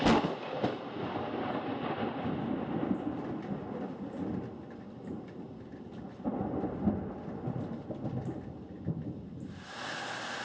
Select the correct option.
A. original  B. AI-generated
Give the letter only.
A